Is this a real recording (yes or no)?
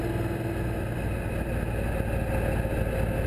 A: yes